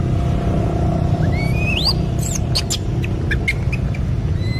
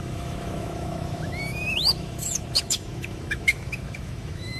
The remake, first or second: second